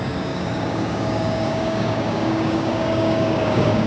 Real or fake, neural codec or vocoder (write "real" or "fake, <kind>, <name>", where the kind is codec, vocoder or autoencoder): fake, codec, DAC